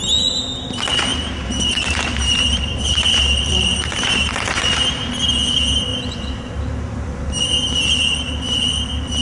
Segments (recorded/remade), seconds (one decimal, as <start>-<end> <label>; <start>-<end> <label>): 0.0-1.1 recorded; 1.1-4.3 remade; 4.3-5.9 recorded; 5.9-7.4 remade; 7.4-9.2 recorded